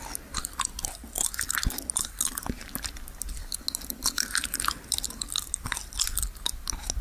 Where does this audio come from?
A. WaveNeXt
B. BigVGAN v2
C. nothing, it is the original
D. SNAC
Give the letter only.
C